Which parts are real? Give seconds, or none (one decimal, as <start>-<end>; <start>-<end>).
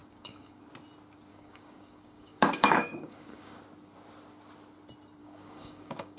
0.6-1.3; 3.6-5.2